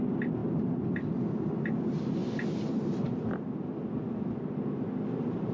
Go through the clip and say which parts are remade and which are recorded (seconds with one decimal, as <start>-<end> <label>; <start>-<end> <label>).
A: 0.0-0.4 recorded; 0.4-1.5 remade; 1.5-2.2 recorded; 2.2-3.9 remade; 3.9-5.5 recorded